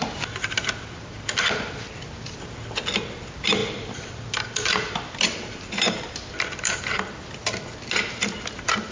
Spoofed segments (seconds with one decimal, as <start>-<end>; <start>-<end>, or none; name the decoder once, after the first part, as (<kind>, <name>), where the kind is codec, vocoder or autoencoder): 3.6-6.8 (vocoder, BigVGAN v2)